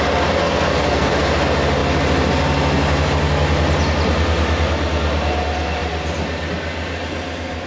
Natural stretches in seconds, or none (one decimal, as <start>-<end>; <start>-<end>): 0.0-0.4; 1.1-7.7